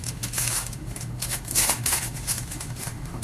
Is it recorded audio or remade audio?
remade